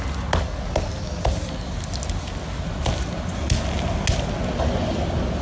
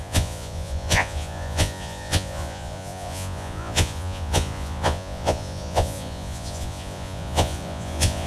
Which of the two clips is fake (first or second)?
second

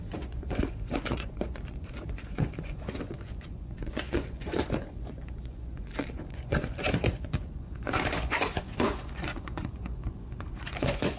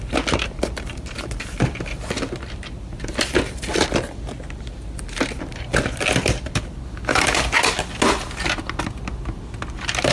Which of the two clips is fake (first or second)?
first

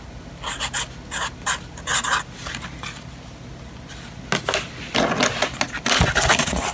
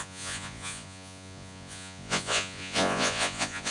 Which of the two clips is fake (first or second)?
second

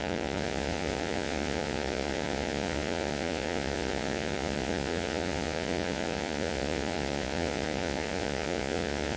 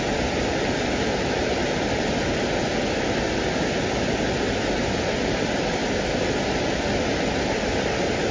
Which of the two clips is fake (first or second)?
first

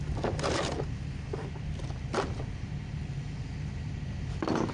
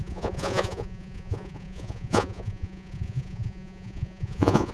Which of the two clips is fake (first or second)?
second